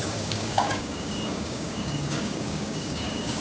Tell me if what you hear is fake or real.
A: fake